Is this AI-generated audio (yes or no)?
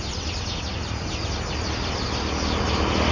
no